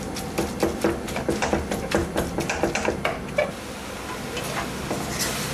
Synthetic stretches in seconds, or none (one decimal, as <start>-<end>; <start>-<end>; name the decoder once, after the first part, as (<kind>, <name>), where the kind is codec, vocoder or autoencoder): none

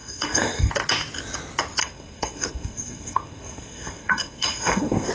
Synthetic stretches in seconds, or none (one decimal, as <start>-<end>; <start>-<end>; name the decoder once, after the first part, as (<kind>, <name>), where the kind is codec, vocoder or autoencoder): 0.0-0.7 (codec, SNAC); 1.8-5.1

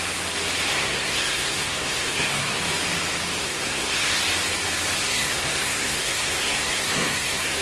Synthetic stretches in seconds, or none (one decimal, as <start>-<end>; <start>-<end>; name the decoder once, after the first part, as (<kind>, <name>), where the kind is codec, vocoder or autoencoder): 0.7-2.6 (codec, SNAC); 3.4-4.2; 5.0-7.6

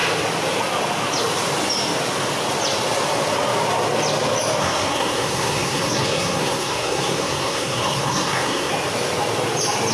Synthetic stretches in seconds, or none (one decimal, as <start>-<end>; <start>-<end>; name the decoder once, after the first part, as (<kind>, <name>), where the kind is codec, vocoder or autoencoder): 4.6-8.7 (codec, SNAC)

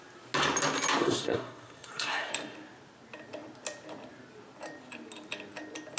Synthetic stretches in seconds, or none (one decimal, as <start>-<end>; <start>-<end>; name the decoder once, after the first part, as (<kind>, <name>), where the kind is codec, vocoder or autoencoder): 1.0-2.3 (codec, SNAC)

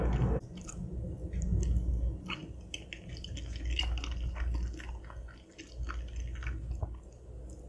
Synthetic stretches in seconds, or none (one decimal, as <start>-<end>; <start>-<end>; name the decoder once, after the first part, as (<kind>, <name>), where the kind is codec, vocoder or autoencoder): none